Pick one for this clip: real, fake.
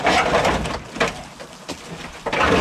real